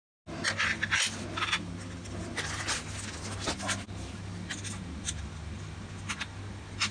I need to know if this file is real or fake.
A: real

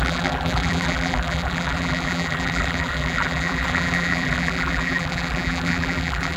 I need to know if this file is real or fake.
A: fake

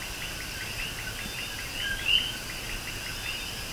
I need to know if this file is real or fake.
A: real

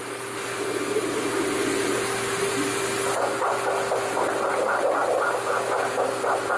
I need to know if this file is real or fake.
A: real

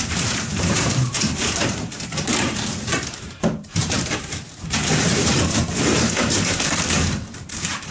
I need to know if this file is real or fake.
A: fake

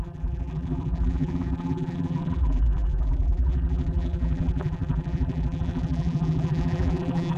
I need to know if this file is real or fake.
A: fake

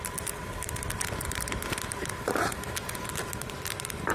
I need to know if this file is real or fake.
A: fake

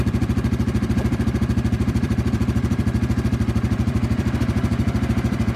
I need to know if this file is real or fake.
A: fake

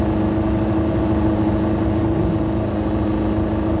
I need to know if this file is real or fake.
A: real